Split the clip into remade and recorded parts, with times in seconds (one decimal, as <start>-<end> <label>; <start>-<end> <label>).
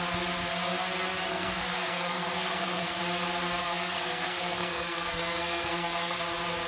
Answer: 0.0-1.3 recorded; 1.3-3.0 remade; 3.0-3.6 recorded; 3.6-6.2 remade; 6.2-6.7 recorded